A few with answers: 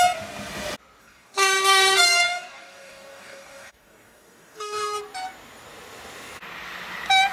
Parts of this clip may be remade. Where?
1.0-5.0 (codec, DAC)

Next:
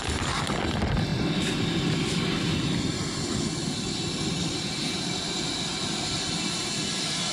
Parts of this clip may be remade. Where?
none

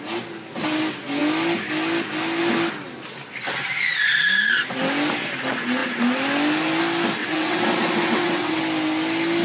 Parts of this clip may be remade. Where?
7.2-8.6 (vocoder, WaveNeXt)

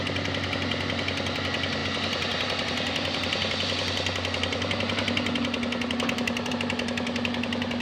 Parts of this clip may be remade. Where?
none